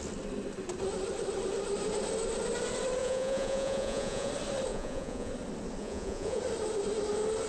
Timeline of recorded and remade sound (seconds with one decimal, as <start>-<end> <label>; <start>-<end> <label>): 0.0-3.0 recorded; 3.0-4.3 remade; 4.3-4.7 recorded; 4.7-5.3 remade; 5.3-5.8 recorded; 5.8-6.4 remade; 6.4-7.5 recorded